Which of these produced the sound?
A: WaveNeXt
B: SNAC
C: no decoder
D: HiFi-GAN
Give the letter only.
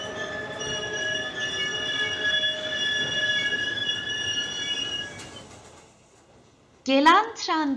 C